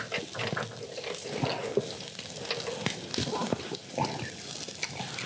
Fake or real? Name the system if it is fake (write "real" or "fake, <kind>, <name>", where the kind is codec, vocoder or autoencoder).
real